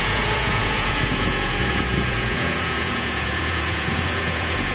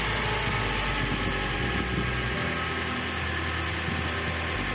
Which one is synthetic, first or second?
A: first